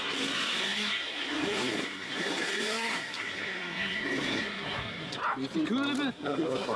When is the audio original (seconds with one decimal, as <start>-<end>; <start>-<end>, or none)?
5.2-6.1